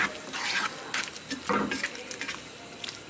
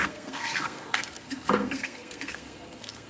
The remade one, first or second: second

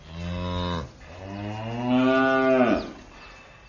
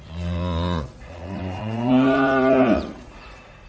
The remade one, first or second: second